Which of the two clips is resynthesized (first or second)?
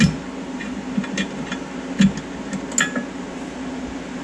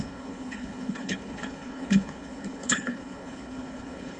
second